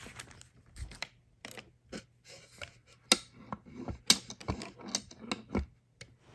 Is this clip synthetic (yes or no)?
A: no